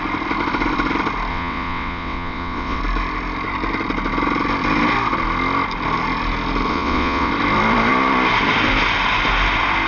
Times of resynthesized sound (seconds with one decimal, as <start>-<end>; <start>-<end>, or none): 1.3-2.8; 6.7-7.3